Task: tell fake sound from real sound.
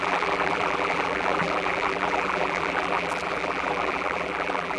fake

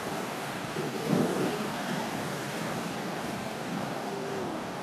fake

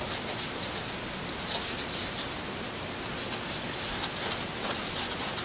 real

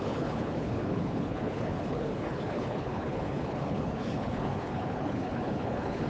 fake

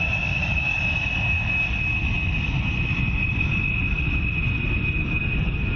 real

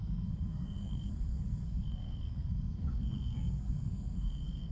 fake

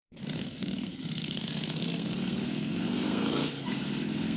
fake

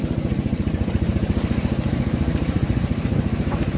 fake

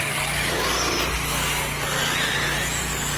real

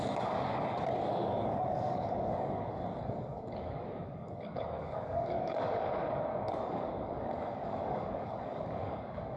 fake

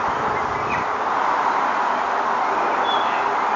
real